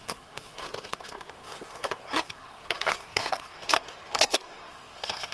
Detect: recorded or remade remade